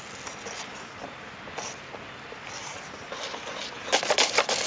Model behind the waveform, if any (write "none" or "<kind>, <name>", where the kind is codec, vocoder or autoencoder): none